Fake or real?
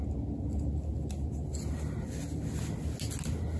real